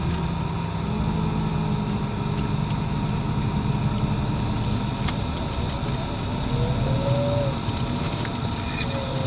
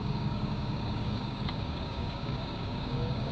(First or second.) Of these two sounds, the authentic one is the first